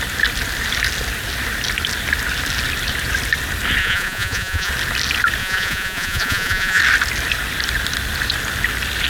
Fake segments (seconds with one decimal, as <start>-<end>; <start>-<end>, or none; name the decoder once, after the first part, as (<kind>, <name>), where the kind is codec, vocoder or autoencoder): 3.8-4.7 (vocoder, Vocos); 5.4-6.8